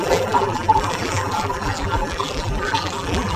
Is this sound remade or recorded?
remade